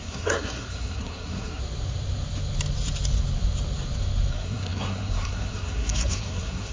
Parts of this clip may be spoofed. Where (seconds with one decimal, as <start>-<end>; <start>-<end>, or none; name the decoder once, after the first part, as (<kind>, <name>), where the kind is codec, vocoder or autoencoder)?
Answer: 0.0-1.6 (codec, SNAC); 4.3-6.7